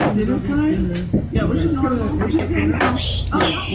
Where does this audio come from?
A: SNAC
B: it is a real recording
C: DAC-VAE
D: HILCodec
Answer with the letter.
B